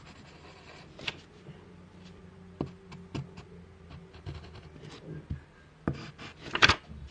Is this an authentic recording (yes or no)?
yes